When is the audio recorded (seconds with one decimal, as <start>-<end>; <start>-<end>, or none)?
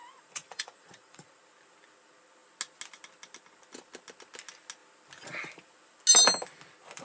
1.4-7.0